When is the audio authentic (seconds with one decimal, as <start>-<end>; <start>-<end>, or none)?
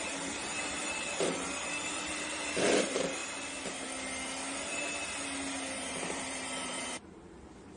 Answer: 3.2-5.8